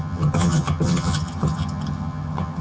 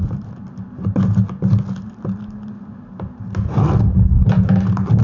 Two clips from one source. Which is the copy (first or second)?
first